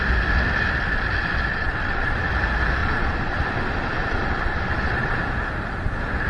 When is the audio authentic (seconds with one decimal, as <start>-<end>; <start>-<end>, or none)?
0.0-1.5; 2.3-2.8; 5.2-6.3